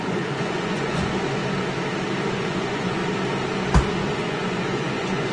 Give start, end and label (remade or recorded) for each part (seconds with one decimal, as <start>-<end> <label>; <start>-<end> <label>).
0.0-1.4 remade; 1.4-2.2 recorded; 2.2-3.0 remade; 3.0-3.9 recorded; 3.9-5.3 remade